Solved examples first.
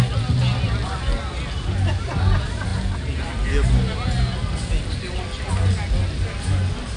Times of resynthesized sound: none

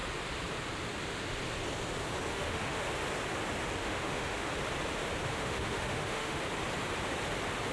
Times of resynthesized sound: 2.3-2.8 (autoencoder, DAC-VAE); 3.8-4.5; 5.3-6.4

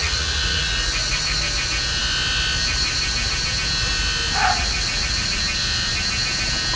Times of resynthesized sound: 0.0-1.2 (vocoder, Vocos); 4.4-5.4